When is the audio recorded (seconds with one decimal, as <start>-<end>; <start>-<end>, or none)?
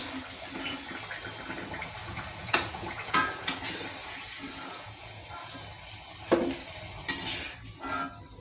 0.0-2.0; 3.6-4.0; 5.2-8.4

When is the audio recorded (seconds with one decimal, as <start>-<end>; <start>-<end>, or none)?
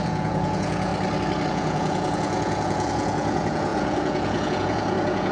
0.9-1.5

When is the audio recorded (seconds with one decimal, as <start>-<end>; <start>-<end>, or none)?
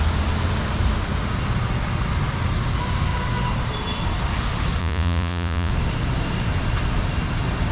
0.0-4.8; 5.7-7.7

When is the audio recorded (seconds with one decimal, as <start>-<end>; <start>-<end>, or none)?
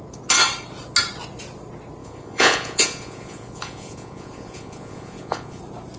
0.0-2.0; 5.6-6.0